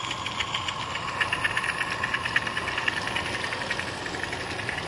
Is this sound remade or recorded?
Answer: recorded